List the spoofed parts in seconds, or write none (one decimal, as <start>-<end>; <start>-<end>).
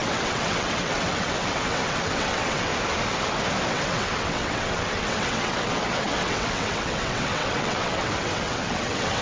0.0-2.7; 3.7-9.2